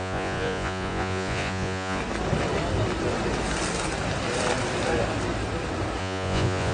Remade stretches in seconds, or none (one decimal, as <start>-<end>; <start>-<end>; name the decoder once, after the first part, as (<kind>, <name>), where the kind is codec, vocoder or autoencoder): 0.0-2.0 (vocoder, Vocos); 6.0-6.7

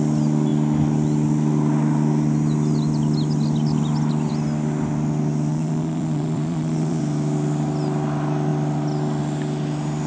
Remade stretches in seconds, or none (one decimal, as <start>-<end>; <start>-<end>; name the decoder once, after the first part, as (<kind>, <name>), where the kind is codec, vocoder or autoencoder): 5.5-7.0 (vocoder, Vocos)

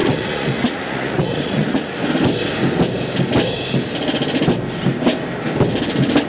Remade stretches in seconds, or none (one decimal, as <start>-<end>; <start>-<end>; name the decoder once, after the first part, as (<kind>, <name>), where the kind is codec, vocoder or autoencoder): 0.0-1.9 (vocoder, Vocos)

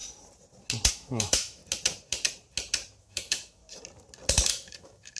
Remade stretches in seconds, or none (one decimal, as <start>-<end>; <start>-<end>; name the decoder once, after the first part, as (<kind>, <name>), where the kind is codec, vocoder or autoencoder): 0.9-1.6 (autoencoder, DAC-VAE); 3.0-3.6; 4.5-5.2

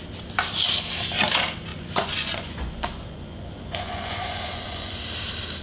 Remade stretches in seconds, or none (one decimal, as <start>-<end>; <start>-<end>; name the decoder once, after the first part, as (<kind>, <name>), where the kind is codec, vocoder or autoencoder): 1.7-5.0 (vocoder, Vocos)

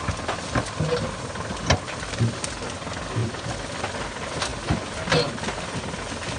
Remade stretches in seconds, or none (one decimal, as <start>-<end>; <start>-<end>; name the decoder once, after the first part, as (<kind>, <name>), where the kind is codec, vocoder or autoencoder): none

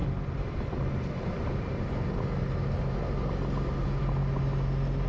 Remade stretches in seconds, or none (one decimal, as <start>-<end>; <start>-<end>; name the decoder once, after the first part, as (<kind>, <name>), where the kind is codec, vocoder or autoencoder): 0.0-1.1 (vocoder, BigVGAN v2)

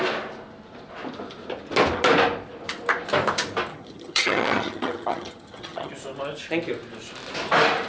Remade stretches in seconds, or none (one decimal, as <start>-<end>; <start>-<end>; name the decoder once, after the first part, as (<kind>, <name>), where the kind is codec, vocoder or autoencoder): 3.7-5.9 (vocoder, HiFi-GAN)